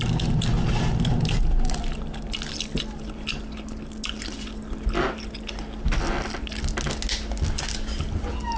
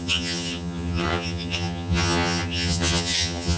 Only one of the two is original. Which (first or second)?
first